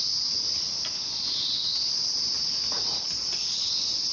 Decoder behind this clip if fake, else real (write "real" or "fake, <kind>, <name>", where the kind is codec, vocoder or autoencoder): real